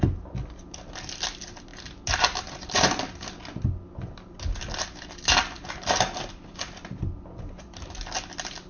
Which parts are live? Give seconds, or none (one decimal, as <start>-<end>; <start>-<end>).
0.0-8.7

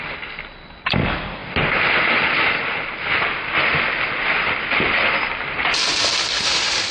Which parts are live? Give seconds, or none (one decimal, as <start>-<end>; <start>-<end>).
0.0-6.9

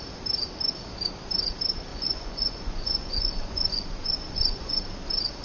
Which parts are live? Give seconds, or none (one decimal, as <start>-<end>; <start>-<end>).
0.0-1.9; 4.8-5.4

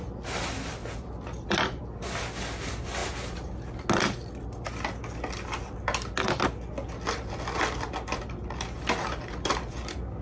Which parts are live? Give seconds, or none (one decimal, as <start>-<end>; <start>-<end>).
0.0-10.2

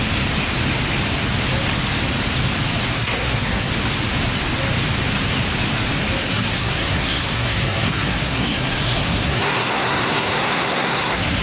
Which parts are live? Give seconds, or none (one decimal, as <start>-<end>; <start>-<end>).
0.0-2.9; 3.7-6.2

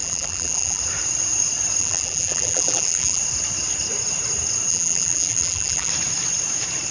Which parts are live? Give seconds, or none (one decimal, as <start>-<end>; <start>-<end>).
0.8-1.8; 3.2-4.7; 5.9-6.9

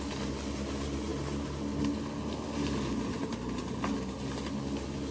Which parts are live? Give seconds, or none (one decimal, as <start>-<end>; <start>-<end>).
0.0-5.1